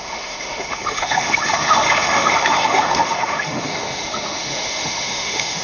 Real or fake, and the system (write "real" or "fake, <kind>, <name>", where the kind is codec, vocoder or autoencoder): fake, autoencoder, DAC-VAE